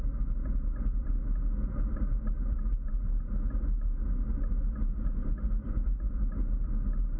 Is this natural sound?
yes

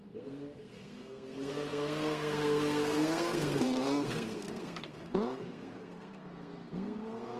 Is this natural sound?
no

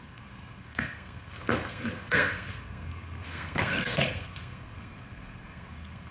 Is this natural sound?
no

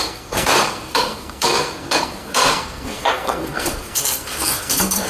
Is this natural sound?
no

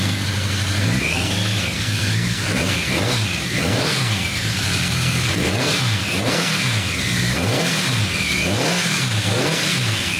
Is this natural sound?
no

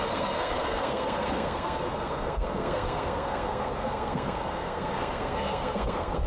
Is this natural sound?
no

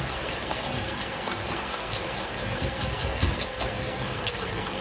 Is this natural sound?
no